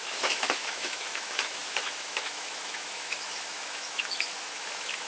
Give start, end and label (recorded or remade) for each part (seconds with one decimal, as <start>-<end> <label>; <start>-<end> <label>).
0.0-5.1 remade